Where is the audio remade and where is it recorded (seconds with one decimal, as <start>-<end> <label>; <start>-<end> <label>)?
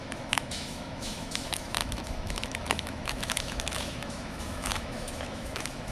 0.0-5.9 remade